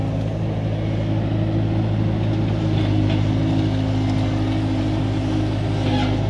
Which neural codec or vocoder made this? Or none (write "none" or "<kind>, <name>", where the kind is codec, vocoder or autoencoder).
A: none